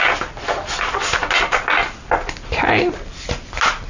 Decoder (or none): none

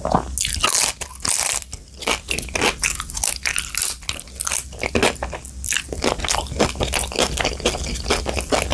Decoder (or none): none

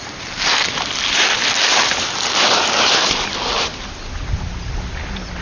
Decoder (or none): none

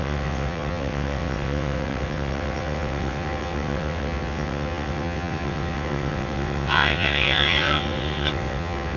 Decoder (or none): vocoder, WaveNeXt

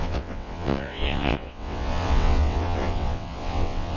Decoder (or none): vocoder, WaveNeXt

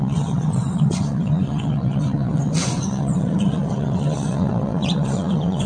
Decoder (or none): vocoder, WaveNeXt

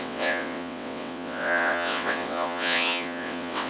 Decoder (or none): vocoder, WaveNeXt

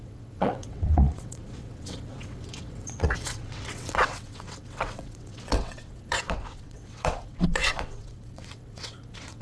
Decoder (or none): vocoder, WaveNeXt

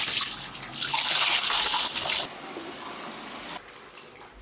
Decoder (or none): none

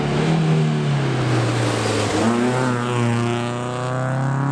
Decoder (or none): none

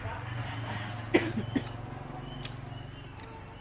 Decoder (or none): none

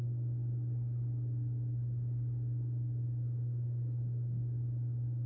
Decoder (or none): none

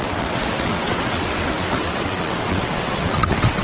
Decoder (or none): vocoder, WaveNeXt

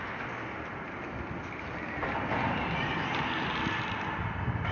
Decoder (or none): none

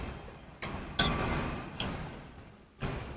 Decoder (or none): none